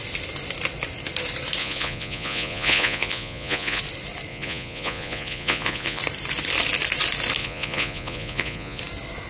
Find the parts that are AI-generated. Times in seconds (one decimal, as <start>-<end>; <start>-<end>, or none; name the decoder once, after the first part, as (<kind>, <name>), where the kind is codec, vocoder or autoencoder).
1.6-3.8 (vocoder, Vocos); 4.3-6.0; 7.4-8.8